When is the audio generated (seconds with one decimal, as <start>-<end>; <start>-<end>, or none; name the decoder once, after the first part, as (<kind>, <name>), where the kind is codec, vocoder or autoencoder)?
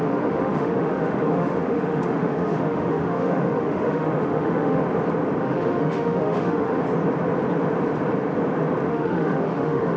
0.0-4.8 (autoencoder, DAC-VAE); 5.4-6.8; 8.9-10.0